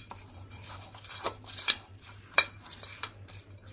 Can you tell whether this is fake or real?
fake